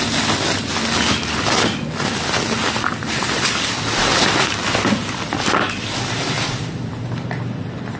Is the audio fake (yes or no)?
no